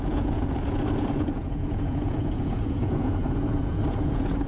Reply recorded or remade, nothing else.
remade